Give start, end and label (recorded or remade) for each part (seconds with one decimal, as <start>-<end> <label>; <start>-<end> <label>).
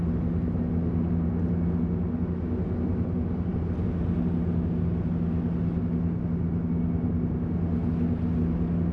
0.0-8.9 recorded